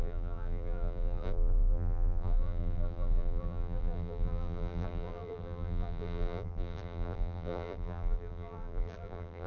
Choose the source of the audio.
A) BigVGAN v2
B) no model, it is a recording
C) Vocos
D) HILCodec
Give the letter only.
A